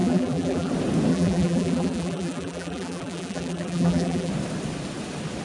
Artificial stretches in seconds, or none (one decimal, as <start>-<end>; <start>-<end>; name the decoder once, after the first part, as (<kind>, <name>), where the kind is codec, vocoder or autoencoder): 0.0-0.7 (vocoder, BigVGAN v2); 1.1-4.3